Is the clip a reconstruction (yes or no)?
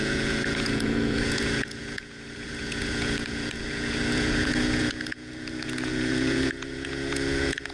yes